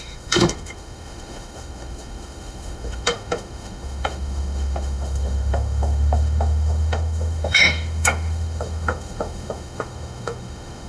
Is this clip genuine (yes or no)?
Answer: no